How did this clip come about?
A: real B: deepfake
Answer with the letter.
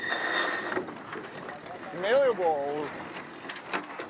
A